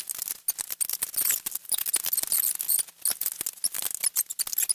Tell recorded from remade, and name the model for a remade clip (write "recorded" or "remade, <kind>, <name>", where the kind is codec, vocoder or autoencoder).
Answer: recorded